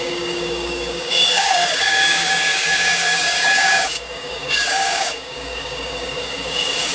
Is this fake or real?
fake